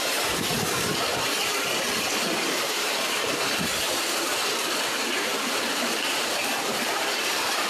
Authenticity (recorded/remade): remade